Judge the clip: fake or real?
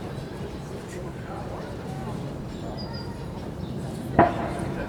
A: fake